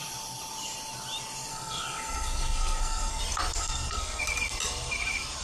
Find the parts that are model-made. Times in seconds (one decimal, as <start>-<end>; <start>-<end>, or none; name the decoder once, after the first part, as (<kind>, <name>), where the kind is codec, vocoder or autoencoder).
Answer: 1.5-3.2 (codec, SNAC); 3.6-4.2